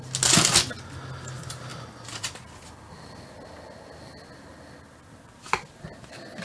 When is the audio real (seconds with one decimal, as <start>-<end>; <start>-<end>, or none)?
0.0-6.4